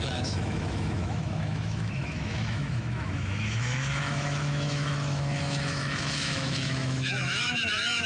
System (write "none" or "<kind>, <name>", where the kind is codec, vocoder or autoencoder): autoencoder, DAC-VAE